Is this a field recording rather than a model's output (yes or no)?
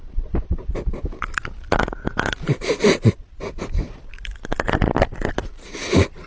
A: yes